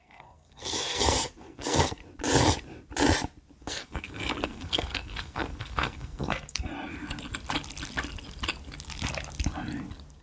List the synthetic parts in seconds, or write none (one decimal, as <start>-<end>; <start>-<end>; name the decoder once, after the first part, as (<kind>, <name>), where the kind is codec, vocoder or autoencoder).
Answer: 0.0-2.0 (codec, SNAC); 3.6-6.7